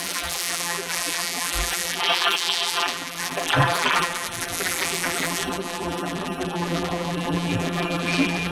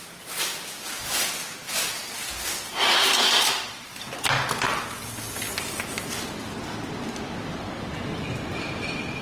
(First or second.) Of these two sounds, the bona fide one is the second